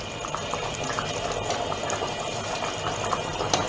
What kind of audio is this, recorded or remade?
recorded